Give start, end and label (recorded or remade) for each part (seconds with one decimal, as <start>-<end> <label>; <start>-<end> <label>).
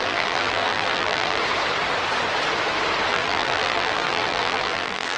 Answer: 0.0-1.4 remade; 1.4-3.1 recorded; 3.1-5.2 remade